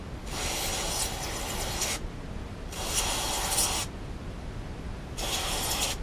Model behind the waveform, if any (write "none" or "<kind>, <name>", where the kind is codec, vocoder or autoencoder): none